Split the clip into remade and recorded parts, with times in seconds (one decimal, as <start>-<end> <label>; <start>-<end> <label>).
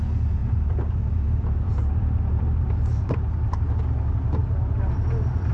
0.0-0.4 recorded; 0.4-3.7 remade; 3.7-4.4 recorded; 4.4-5.5 remade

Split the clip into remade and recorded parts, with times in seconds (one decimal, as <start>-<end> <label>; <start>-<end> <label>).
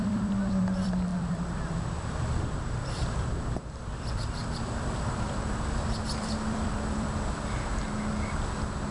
0.0-7.7 remade; 7.7-8.9 recorded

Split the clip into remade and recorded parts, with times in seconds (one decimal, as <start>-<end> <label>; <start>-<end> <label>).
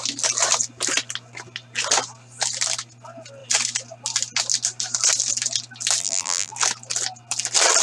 0.0-6.0 recorded; 6.0-6.5 remade; 6.5-7.8 recorded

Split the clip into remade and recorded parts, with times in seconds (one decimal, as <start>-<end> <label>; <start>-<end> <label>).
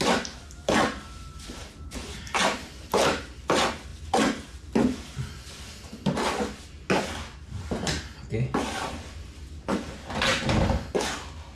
0.0-11.5 recorded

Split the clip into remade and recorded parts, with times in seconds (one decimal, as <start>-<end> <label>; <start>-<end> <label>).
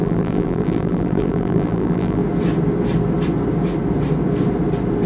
0.0-2.2 remade; 2.2-5.1 recorded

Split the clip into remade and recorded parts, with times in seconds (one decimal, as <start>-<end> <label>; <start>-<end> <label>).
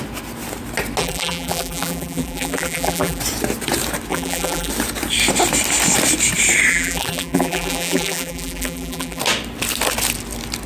0.0-1.0 recorded; 1.0-3.2 remade; 3.2-4.1 recorded; 4.1-4.7 remade; 4.7-6.7 recorded; 6.7-9.2 remade; 9.2-10.7 recorded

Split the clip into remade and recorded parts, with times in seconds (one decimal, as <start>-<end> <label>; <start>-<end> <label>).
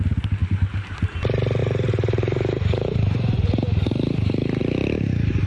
0.0-0.4 recorded; 0.4-1.2 remade; 1.2-1.6 recorded; 1.6-4.6 remade; 4.6-5.5 recorded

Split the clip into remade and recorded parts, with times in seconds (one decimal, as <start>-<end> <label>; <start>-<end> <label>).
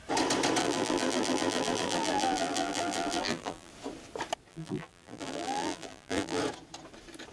0.0-0.6 recorded; 0.6-3.7 remade; 3.7-4.5 recorded; 4.5-6.4 remade; 6.4-7.3 recorded